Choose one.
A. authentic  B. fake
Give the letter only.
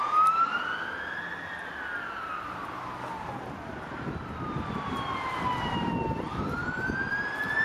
A